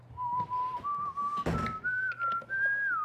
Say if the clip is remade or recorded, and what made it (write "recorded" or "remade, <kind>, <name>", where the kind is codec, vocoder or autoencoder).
recorded